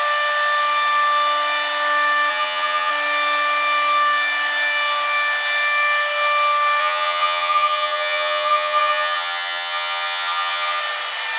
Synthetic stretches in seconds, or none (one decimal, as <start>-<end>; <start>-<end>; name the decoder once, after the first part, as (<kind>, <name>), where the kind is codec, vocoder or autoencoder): 2.3-2.9 (vocoder, HiFi-GAN); 6.8-10.8